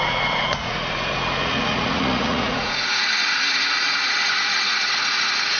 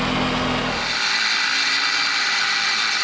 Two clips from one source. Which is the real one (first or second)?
second